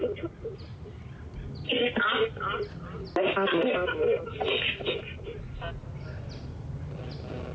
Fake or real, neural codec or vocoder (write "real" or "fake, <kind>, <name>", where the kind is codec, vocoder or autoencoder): real